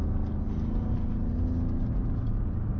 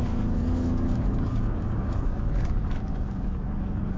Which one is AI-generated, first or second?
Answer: second